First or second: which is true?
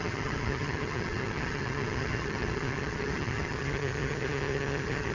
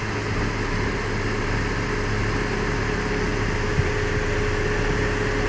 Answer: second